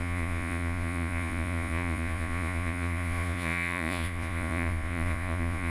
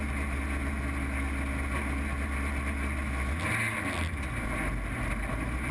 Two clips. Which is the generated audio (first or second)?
first